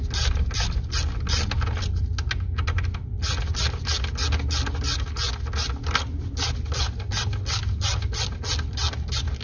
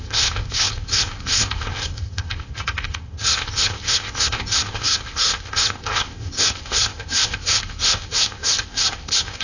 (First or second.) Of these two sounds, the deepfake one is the second